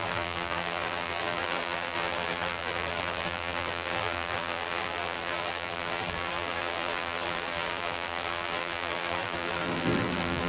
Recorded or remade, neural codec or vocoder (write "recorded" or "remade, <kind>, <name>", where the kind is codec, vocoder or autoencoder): remade, vocoder, BigVGAN v2